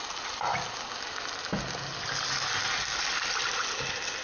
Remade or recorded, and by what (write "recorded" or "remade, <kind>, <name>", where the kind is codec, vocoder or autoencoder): recorded